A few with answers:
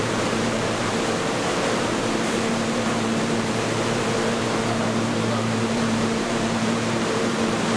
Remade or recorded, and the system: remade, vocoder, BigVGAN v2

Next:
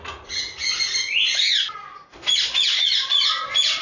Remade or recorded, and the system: remade, vocoder, Vocos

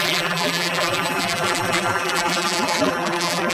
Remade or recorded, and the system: remade, vocoder, BigVGAN v2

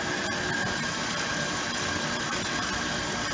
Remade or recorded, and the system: recorded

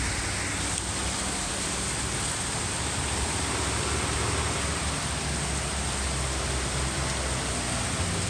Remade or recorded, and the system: recorded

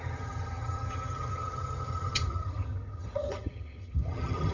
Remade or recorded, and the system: remade, vocoder, HiFi-GAN